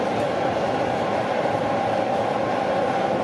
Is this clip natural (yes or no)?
yes